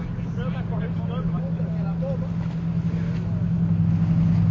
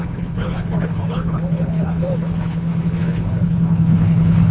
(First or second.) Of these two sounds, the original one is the first